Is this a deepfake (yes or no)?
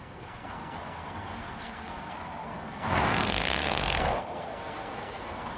yes